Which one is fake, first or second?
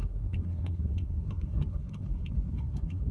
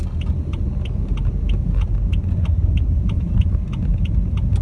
first